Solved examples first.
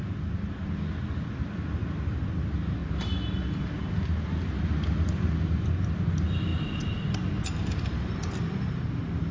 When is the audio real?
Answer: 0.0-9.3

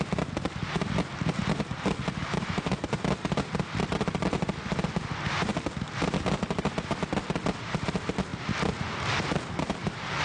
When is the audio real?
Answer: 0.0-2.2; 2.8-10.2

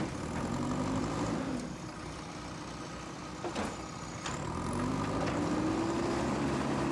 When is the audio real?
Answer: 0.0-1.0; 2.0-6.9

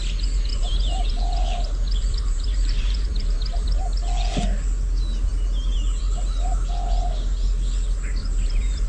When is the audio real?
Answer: 0.0-0.5; 3.8-8.2